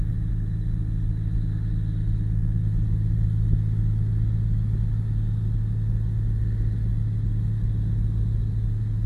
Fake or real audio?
real